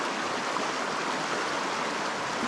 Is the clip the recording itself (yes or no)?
yes